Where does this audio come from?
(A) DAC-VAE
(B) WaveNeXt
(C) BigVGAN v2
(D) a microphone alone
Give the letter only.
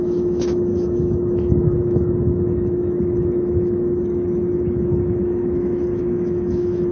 A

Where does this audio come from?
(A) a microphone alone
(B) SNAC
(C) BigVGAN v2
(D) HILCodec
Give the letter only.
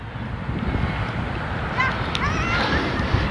C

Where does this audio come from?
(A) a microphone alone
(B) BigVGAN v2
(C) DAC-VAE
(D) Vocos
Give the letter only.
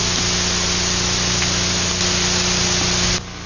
A